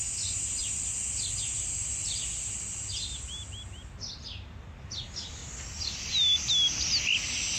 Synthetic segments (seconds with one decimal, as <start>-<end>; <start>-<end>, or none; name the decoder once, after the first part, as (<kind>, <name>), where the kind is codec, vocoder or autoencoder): 0.0-0.6 (vocoder, BigVGAN v2); 4.9-5.4